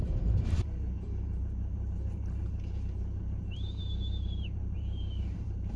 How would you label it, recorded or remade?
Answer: remade